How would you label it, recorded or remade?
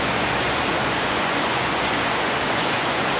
remade